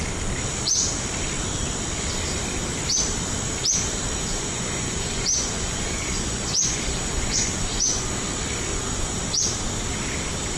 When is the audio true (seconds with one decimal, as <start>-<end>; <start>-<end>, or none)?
0.0-4.2; 8.1-8.7; 9.2-10.6